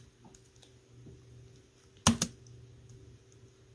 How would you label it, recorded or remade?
recorded